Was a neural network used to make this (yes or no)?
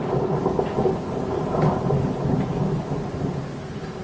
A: no